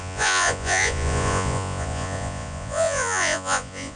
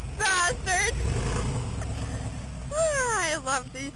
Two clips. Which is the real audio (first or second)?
second